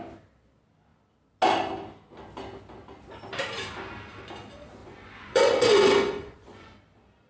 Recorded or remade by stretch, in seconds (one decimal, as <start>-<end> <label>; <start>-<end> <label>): 0.0-4.8 recorded; 4.8-6.8 remade; 6.8-7.3 recorded